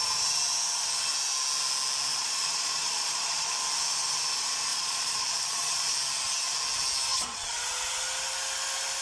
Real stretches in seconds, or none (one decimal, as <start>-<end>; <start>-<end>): 0.0-2.1; 3.5-4.7; 5.9-7.1; 7.6-9.0